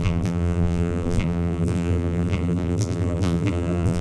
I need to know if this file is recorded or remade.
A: remade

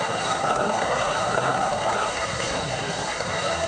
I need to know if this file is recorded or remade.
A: remade